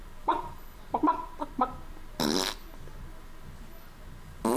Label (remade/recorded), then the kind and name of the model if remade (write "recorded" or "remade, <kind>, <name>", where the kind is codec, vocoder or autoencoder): remade, vocoder, BigVGAN v2